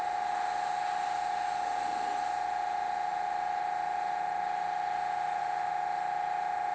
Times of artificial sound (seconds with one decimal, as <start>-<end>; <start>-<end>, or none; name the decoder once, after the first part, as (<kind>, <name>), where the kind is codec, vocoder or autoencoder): none